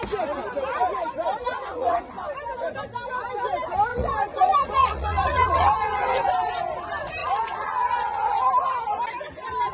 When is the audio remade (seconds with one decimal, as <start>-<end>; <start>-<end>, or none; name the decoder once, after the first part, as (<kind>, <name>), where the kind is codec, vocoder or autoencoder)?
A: 1.5-2.1 (vocoder, Vocos); 3.9-6.3; 7.2-8.5